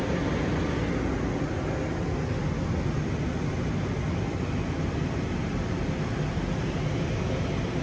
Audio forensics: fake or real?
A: real